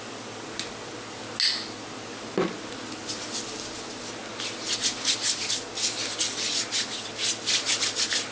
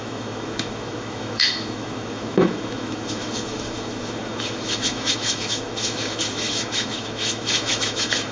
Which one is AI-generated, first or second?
second